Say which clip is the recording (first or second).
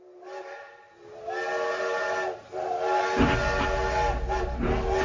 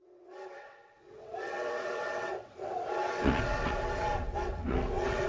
first